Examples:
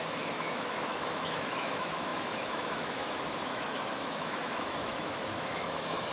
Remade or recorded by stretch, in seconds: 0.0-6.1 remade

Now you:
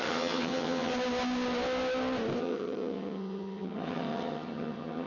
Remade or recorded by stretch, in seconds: 0.0-0.9 remade; 0.9-2.4 recorded; 2.4-5.1 remade

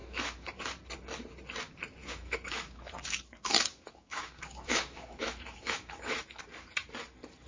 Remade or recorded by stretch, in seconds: 0.0-0.7 remade; 0.7-2.0 recorded; 2.0-6.4 remade; 6.4-7.5 recorded

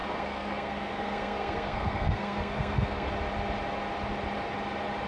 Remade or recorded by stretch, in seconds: 0.0-3.1 remade; 3.1-5.1 recorded

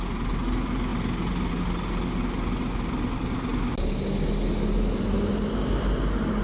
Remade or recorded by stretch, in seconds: 0.0-6.4 recorded

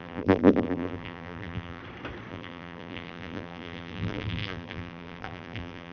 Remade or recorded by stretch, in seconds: 0.0-1.8 remade; 1.8-2.3 recorded; 2.3-5.9 remade